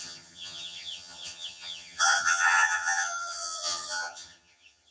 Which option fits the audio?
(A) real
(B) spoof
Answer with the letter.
B